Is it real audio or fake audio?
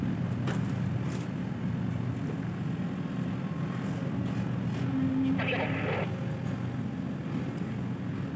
real